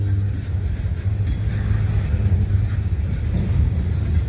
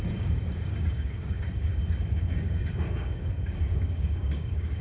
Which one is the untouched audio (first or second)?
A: first